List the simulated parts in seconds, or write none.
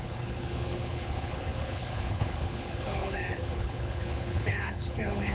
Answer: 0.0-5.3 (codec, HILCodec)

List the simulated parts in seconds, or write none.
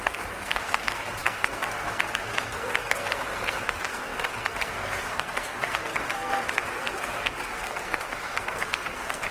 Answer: 0.0-9.3 (codec, SNAC)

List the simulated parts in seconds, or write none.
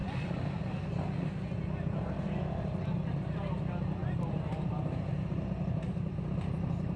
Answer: 4.0-6.1 (vocoder, BigVGAN v2)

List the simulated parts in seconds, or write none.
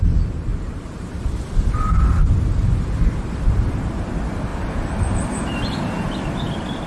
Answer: 0.5-4.1 (vocoder, BigVGAN v2); 4.5-6.2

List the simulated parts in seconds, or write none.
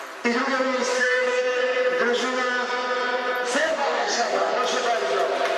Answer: 0.9-1.6 (codec, DAC); 3.5-4.5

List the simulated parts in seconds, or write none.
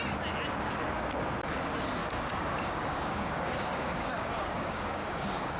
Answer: 2.0-5.6 (codec, DAC)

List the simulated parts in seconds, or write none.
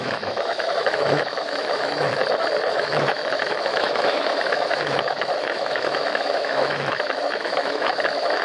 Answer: 0.0-2.2 (autoencoder, DAC-VAE); 2.7-8.4